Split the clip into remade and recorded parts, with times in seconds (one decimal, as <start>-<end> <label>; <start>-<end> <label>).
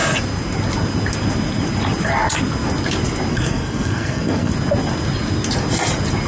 0.0-3.3 recorded; 3.3-4.5 remade; 4.5-6.3 recorded